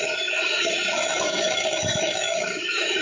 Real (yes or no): no